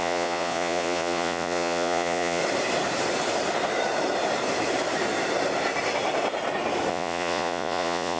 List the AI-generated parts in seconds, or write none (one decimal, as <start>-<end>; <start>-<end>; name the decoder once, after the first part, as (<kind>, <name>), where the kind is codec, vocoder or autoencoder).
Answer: 0.0-2.4 (vocoder, Vocos); 6.9-8.2